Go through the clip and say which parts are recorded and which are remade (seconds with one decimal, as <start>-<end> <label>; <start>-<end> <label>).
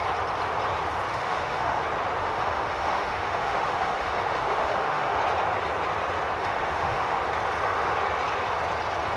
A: 0.0-1.1 recorded; 1.1-1.8 remade; 1.8-2.2 recorded; 2.2-5.2 remade; 5.2-6.4 recorded; 6.4-7.2 remade; 7.2-9.2 recorded